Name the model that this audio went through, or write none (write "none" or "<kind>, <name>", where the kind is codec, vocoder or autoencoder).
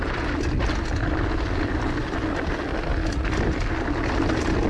none